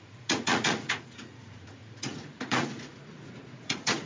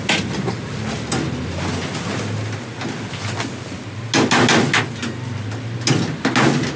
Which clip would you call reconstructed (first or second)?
first